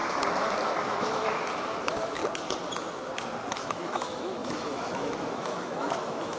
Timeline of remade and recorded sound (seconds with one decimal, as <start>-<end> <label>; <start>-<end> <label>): 0.0-0.8 recorded; 0.8-2.2 remade; 2.2-3.5 recorded; 3.5-6.4 remade